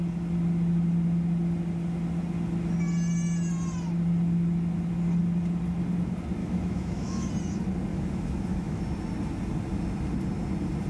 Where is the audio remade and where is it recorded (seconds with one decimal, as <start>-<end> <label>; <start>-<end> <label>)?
0.0-6.4 recorded; 6.4-7.3 remade; 7.3-7.9 recorded; 7.9-8.8 remade; 8.8-10.9 recorded